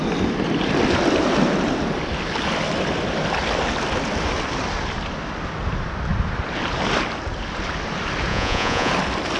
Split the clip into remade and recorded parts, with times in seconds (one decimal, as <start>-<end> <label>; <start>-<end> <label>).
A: 0.0-8.3 recorded; 8.3-8.9 remade; 8.9-9.4 recorded